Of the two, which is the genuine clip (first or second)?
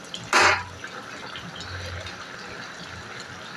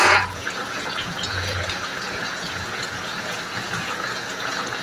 first